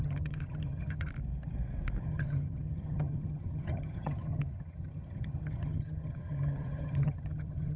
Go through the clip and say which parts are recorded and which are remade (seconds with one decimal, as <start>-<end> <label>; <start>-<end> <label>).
0.0-1.1 remade; 1.1-2.0 recorded; 2.0-7.8 remade